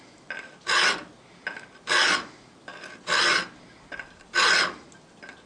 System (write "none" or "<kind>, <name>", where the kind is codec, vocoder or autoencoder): none